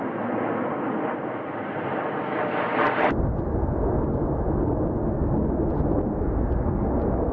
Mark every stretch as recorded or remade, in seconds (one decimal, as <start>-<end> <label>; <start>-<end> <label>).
0.0-7.3 recorded

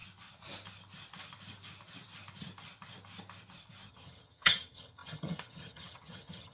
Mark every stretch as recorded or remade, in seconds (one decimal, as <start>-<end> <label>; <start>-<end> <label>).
0.0-3.9 recorded; 3.9-6.5 remade

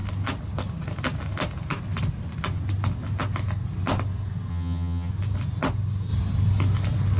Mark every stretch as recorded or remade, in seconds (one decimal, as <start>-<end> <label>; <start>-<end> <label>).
0.0-4.5 recorded; 4.5-5.1 remade; 5.1-7.2 recorded